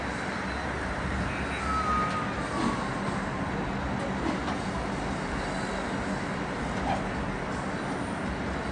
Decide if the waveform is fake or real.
real